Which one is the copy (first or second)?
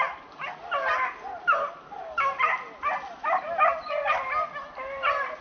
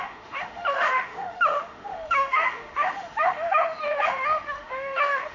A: second